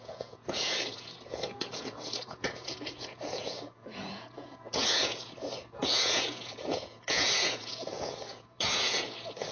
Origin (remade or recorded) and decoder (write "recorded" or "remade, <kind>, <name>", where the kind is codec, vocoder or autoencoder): remade, vocoder, Vocos